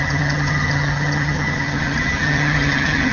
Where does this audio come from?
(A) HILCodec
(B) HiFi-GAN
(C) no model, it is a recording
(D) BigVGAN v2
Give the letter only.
B